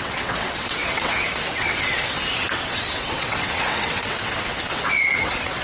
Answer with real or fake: fake